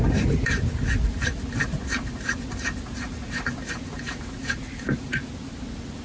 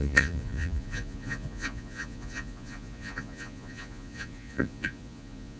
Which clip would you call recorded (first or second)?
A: first